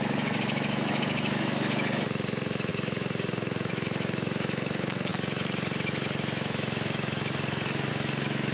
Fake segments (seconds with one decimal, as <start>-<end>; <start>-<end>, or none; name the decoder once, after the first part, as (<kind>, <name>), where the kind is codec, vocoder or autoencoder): 0.0-8.5 (autoencoder, DAC-VAE)